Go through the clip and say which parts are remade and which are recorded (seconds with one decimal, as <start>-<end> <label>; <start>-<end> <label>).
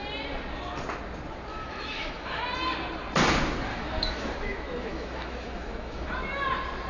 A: 0.0-1.5 recorded; 1.5-2.4 remade; 2.4-3.7 recorded; 3.7-6.1 remade; 6.1-6.9 recorded